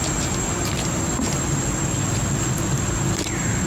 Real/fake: real